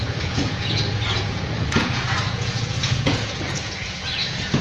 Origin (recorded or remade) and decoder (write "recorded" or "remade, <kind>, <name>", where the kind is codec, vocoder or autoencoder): remade, vocoder, Vocos